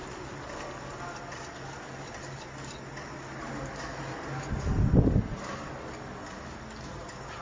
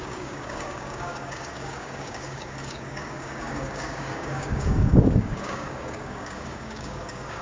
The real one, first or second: first